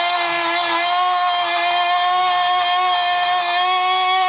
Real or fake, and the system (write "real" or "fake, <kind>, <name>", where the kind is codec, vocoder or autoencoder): fake, codec, DAC